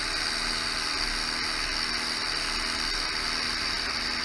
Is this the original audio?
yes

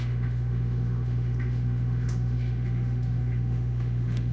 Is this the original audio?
no